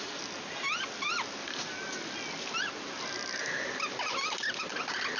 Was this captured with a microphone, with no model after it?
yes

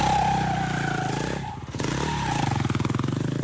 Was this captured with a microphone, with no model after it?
yes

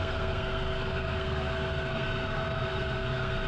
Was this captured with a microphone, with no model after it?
no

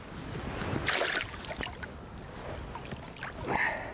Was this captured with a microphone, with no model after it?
yes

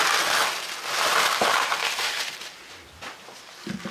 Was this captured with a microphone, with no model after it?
yes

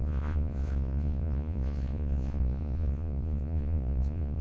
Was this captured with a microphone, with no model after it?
no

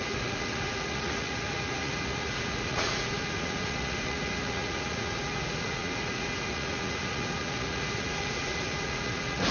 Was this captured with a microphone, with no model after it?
no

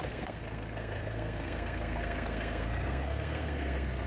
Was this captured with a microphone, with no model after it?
no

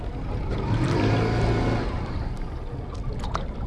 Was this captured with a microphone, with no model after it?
yes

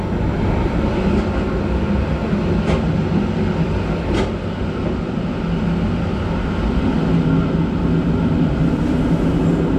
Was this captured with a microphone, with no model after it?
yes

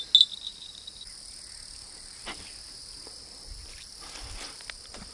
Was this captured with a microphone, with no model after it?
yes